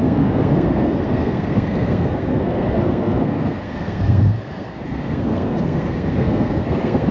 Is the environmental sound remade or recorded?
remade